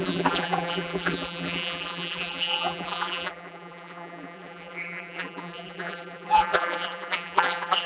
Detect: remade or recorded remade